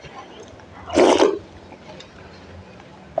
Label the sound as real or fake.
real